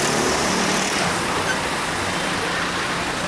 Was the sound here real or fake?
real